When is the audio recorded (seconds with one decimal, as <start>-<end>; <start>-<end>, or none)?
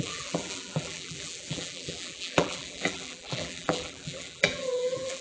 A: none